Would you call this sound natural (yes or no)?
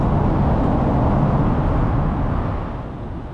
yes